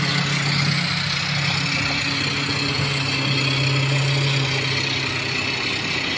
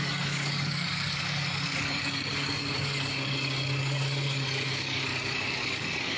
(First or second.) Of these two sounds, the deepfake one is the second